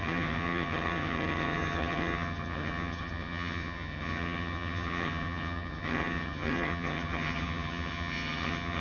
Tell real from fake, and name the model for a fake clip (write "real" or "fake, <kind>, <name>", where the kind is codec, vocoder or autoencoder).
fake, vocoder, HiFi-GAN